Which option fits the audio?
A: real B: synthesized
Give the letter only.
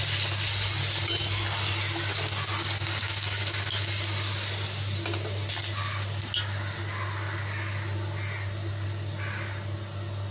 A